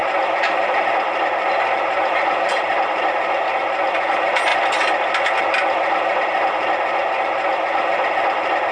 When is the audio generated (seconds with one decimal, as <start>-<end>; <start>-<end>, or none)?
0.0-3.6